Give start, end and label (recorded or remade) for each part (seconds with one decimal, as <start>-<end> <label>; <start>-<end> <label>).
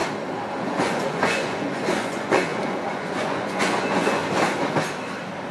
0.0-0.6 recorded; 0.6-4.2 remade; 4.2-5.5 recorded